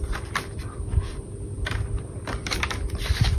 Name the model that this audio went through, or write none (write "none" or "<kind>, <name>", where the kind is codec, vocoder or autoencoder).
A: vocoder, BigVGAN v2